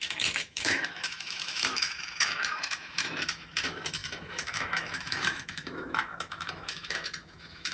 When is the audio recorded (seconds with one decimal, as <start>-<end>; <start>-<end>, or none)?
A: none